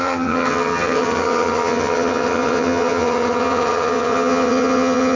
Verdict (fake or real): fake